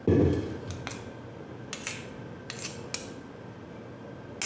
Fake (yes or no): no